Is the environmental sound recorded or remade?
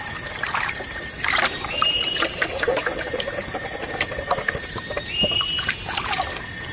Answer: remade